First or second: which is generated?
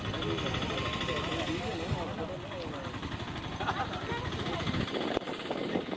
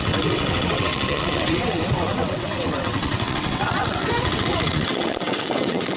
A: second